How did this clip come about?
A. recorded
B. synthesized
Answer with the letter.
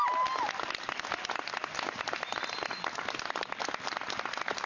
A